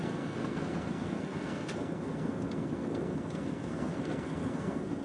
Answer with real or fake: fake